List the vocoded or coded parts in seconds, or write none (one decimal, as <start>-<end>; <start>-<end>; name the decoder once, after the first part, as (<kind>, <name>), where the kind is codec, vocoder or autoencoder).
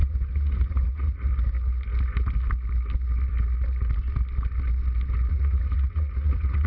0.0-1.3 (vocoder, Vocos); 5.3-6.7